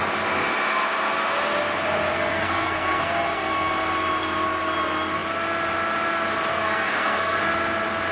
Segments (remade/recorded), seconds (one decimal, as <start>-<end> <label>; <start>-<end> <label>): 0.0-2.1 recorded; 2.1-3.7 remade; 3.7-6.5 recorded; 6.5-7.4 remade; 7.4-8.1 recorded